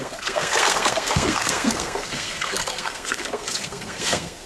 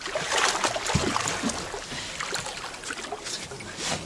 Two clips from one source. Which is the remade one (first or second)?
first